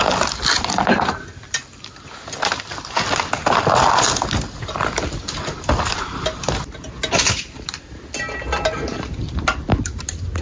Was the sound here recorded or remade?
recorded